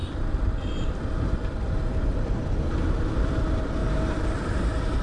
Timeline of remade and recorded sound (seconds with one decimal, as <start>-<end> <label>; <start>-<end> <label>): 0.0-3.8 recorded; 3.8-5.0 remade

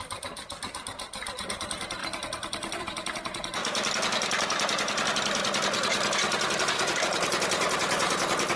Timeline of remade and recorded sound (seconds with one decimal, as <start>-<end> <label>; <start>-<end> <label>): 0.0-3.6 remade; 3.6-6.7 recorded; 6.7-8.6 remade